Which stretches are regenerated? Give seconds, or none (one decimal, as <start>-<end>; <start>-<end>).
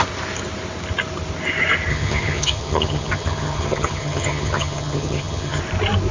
1.9-5.6